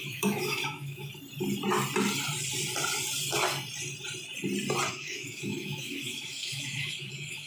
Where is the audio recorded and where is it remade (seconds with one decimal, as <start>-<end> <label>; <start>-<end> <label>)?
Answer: 0.0-1.1 remade; 1.1-4.9 recorded; 4.9-7.5 remade

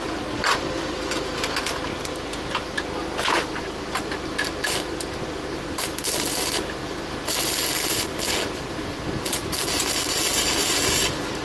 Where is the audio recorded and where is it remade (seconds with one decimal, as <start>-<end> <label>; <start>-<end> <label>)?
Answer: 0.0-11.4 recorded